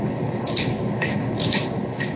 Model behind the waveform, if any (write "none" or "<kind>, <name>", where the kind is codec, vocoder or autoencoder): codec, HILCodec